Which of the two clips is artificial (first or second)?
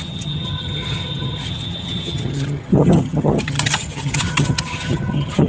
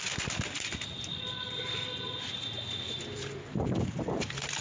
first